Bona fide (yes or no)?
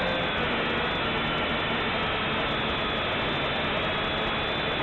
yes